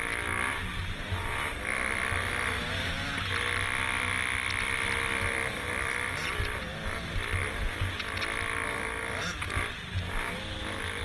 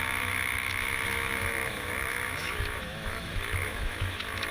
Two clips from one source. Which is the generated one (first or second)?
second